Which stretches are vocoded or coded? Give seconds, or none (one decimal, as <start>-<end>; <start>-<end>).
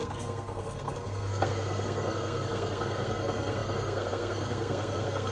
0.0-5.3